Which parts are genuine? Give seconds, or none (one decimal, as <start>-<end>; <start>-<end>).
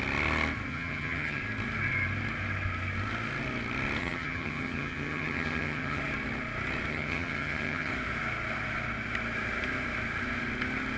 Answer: 0.0-0.7; 1.4-4.0; 6.0-6.9; 7.9-11.0